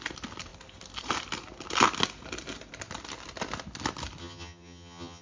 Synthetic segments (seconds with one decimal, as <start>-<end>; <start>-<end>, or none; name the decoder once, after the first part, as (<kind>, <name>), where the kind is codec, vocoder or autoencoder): 4.2-5.2 (vocoder, HiFi-GAN)